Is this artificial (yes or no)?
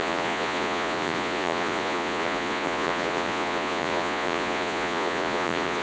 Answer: yes